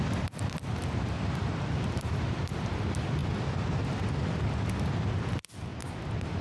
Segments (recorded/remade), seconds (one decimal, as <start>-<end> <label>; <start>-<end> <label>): 0.0-3.2 remade; 3.2-4.3 recorded; 4.3-5.7 remade; 5.7-6.4 recorded